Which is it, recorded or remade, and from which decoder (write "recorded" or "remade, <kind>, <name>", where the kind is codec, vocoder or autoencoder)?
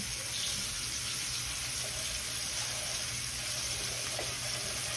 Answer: recorded